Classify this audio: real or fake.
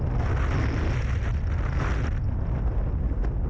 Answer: real